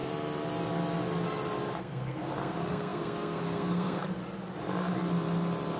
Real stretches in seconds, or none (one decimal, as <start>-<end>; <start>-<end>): 0.0-1.8; 4.2-5.8